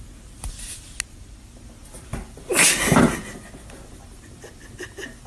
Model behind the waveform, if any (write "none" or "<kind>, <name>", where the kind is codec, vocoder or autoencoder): none